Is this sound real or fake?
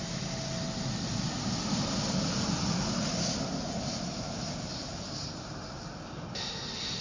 real